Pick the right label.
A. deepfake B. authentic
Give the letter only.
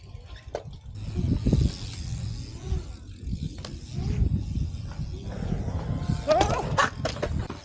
B